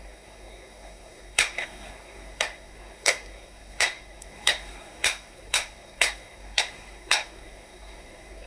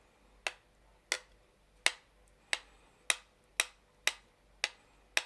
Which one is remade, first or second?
first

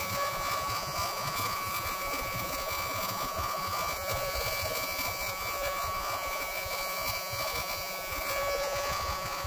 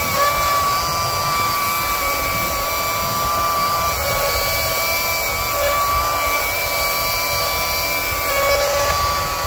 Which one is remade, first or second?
first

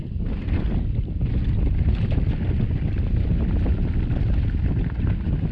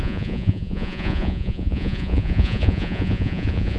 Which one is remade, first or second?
second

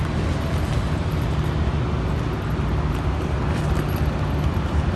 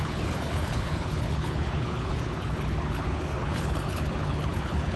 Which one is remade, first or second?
second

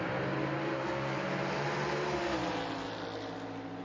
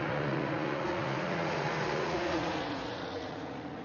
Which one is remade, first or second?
second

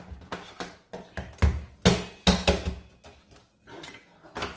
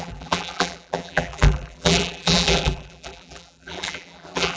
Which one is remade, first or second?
second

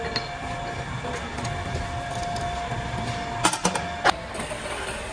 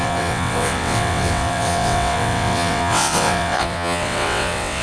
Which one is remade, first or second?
second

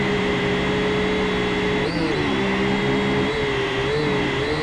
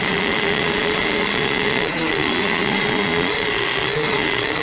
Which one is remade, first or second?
second